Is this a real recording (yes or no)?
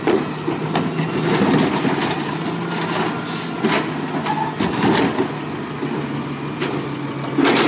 yes